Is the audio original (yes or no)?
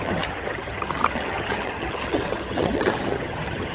no